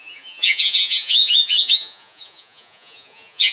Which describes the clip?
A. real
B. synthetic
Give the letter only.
B